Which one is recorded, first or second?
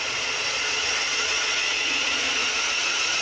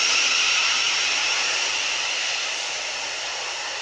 second